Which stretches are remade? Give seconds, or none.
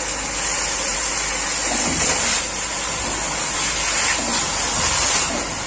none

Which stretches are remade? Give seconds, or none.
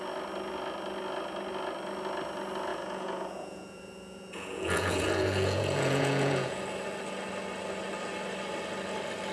2.7-6.6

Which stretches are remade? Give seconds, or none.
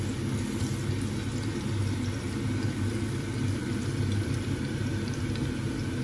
1.3-4.9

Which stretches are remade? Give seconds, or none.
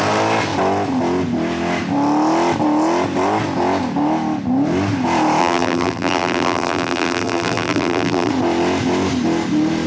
5.4-8.3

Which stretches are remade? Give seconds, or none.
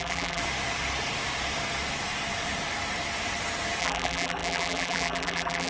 0.0-0.4; 3.8-5.7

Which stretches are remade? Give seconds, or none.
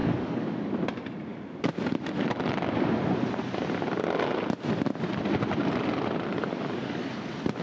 0.0-0.7; 6.3-7.1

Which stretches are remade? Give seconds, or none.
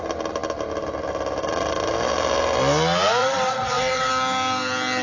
3.2-4.1